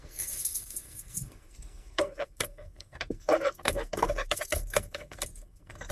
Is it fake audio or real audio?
fake